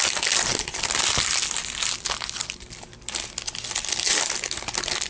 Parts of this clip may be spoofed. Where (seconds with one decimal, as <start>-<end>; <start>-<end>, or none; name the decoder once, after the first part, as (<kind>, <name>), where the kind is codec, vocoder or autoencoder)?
none

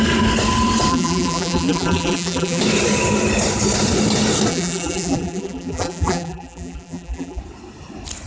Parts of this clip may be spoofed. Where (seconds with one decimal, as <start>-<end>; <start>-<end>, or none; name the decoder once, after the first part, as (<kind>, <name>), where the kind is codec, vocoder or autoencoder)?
0.9-2.6 (vocoder, BigVGAN v2); 4.5-7.4

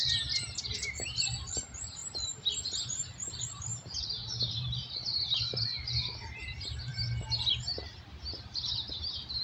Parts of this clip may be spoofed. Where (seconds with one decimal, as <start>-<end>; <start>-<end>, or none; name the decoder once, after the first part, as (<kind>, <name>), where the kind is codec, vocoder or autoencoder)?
0.0-2.0 (vocoder, BigVGAN v2); 2.8-3.7; 4.5-6.9; 7.6-9.4